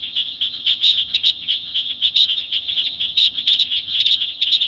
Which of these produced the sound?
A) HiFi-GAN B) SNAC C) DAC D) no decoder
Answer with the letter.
A